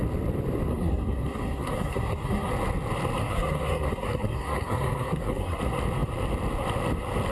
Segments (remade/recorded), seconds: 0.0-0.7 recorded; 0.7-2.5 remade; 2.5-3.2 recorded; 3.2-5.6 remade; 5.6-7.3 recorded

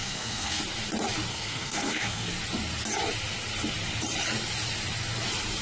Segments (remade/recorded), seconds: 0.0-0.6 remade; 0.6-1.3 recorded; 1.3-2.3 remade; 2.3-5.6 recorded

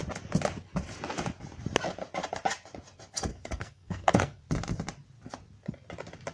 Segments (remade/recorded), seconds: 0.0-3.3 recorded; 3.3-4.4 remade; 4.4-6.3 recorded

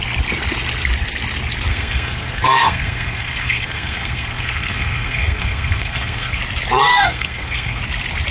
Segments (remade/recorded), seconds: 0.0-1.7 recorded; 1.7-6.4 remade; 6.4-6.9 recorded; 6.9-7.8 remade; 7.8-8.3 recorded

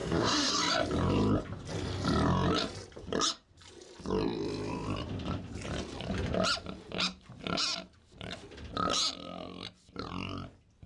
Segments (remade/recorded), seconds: 0.0-0.5 remade; 0.5-10.9 recorded